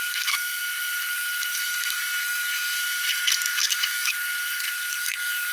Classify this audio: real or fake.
fake